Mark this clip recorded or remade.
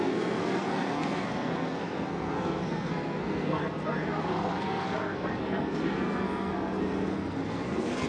remade